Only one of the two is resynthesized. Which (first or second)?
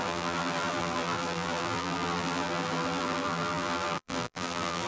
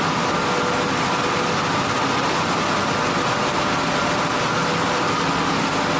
first